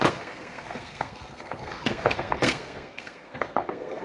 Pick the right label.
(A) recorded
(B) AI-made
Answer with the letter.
B